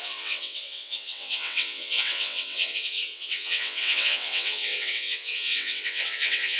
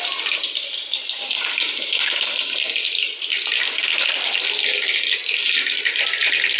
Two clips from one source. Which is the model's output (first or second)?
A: first